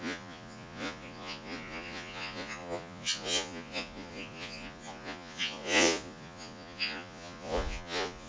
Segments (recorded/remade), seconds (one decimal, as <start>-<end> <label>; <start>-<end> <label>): 0.0-8.3 remade